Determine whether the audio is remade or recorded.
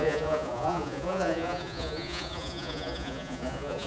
remade